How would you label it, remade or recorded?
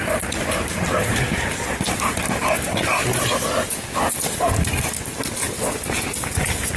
recorded